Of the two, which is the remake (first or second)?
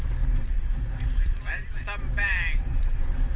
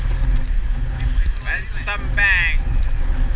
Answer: first